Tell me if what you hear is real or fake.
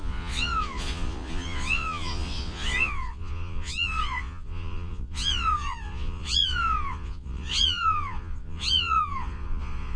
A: fake